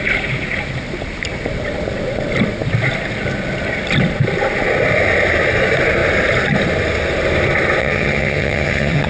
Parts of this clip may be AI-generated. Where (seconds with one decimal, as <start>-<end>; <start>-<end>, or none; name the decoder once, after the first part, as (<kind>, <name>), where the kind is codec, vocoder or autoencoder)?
7.8-9.1 (vocoder, HiFi-GAN)